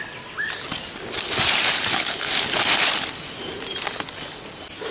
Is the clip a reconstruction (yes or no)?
no